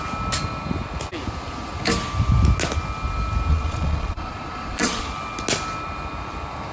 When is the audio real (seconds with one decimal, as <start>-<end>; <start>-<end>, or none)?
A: 0.0-3.5; 5.1-6.7